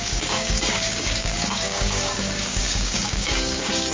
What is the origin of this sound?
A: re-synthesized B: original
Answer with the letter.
A